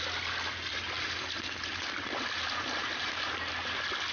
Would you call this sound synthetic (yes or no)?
no